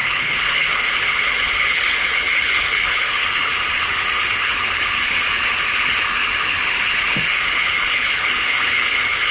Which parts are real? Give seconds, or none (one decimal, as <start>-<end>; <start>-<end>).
none